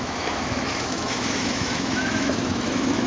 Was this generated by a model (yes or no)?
yes